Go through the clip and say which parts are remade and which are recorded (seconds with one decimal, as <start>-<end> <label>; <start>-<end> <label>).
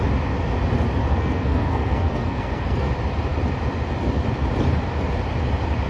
0.0-1.0 recorded; 1.0-2.9 remade; 2.9-5.9 recorded